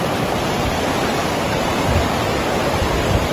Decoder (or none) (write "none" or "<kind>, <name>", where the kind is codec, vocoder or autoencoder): none